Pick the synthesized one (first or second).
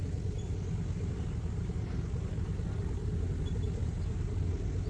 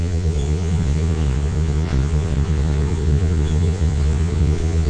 second